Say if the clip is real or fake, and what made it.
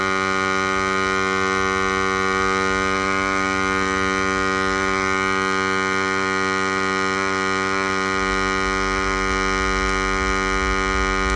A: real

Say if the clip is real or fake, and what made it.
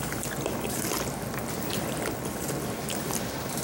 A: real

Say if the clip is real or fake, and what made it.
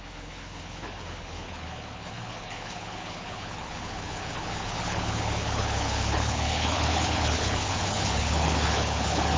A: fake, codec, HILCodec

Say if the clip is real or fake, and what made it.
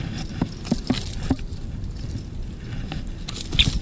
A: real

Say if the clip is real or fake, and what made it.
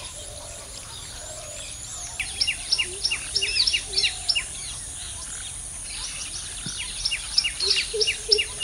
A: real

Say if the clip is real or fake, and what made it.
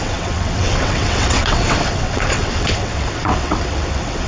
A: fake, vocoder, WaveNeXt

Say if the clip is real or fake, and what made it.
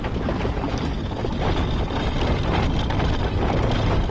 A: real